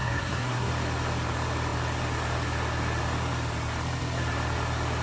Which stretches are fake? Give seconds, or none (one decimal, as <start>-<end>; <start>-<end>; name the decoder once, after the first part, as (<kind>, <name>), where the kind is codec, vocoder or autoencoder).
0.0-0.7 (codec, SNAC)